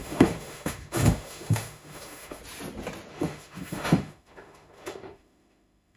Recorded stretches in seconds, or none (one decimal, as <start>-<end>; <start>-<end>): 2.4-3.1